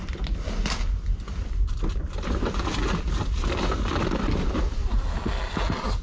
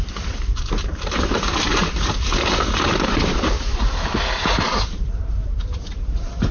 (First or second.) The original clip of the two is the first